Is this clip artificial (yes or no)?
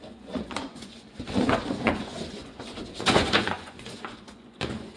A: yes